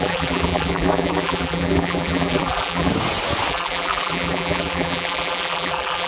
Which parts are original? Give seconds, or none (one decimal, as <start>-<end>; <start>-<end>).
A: 2.9-3.5

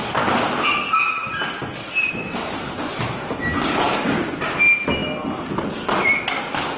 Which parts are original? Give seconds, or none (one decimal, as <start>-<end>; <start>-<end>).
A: 0.0-6.8

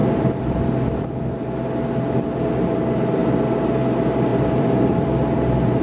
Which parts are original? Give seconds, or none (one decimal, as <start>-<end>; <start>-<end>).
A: 1.0-4.3

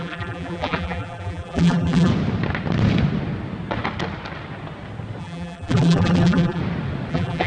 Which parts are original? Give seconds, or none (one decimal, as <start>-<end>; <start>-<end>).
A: 2.1-5.2; 6.6-7.1

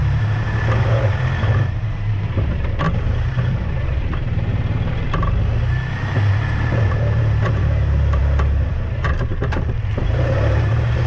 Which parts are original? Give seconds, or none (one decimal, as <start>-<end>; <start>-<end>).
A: 4.5-6.3; 8.2-8.7